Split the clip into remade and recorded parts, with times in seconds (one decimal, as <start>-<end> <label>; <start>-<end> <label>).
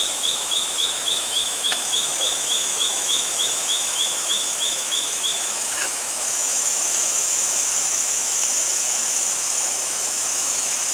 0.0-10.9 remade